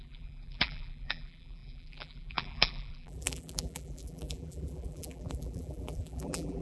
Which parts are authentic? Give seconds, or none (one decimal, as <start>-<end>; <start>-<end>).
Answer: none